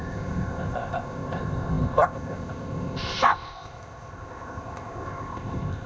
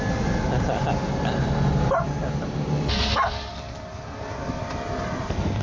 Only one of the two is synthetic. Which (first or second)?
first